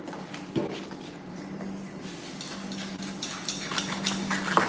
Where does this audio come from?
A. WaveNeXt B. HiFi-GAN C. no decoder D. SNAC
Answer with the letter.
C